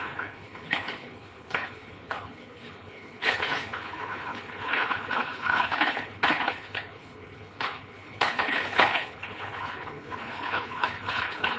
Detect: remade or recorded remade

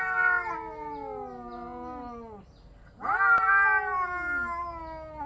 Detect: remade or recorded recorded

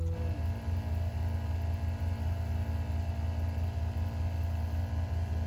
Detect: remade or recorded recorded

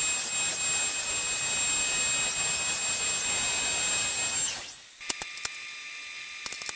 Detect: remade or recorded recorded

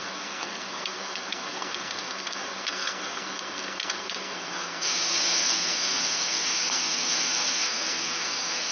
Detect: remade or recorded remade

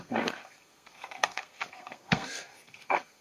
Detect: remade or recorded remade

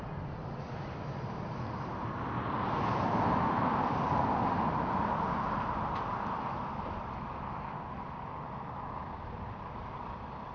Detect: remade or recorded recorded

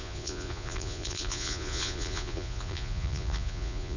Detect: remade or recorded remade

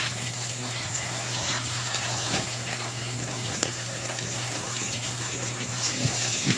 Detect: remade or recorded remade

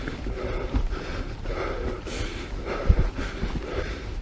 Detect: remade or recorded recorded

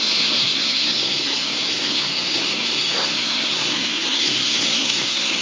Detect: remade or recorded remade